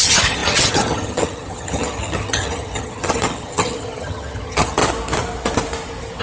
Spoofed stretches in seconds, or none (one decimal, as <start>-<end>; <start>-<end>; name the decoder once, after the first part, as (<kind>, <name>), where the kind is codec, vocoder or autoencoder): 0.0-4.8 (vocoder, HiFi-GAN)